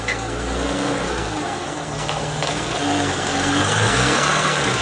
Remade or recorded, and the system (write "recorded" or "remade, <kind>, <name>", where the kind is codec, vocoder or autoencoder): remade, codec, SNAC